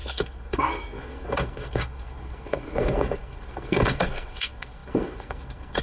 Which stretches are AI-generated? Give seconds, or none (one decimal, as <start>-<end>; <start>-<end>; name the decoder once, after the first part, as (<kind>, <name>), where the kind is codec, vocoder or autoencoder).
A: 0.0-5.8 (codec, SNAC)